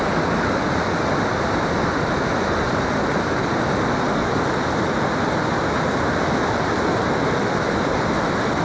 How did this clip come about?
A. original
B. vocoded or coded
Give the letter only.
A